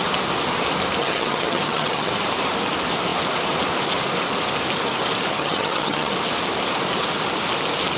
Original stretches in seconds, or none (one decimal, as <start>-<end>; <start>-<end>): 0.0-1.0; 2.1-5.3; 6.1-8.0